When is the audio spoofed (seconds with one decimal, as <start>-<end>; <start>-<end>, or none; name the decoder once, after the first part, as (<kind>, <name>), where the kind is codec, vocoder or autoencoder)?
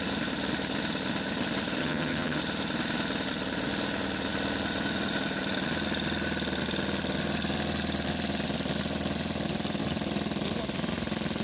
1.8-2.4 (vocoder, HiFi-GAN)